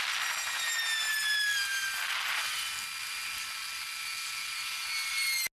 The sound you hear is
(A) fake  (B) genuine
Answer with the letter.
B